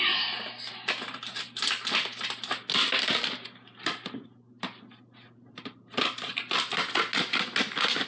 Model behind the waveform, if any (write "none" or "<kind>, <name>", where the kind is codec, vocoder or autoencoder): none